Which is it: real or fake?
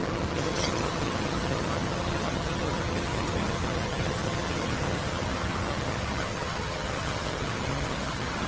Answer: fake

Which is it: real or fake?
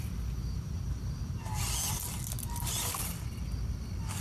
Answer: real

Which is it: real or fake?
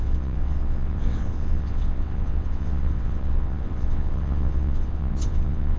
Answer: fake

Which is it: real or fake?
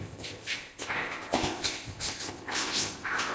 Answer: fake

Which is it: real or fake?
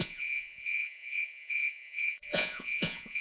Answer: fake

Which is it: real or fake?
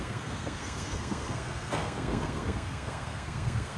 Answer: fake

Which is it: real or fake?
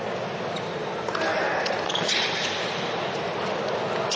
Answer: real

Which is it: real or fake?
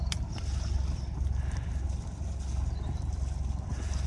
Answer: real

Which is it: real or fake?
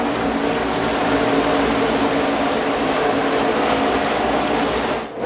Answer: real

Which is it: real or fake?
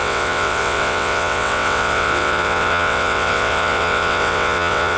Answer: fake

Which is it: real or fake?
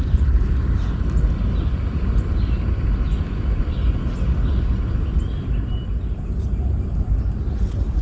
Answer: real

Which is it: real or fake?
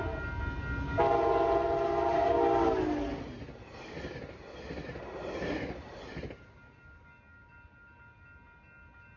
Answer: real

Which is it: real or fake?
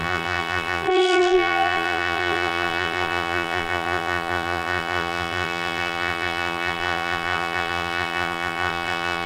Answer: fake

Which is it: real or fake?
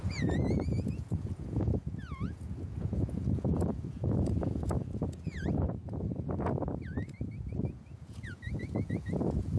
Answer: fake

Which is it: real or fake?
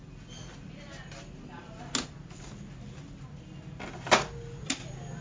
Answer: real